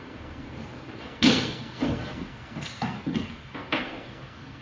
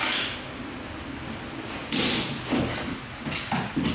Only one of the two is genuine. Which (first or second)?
second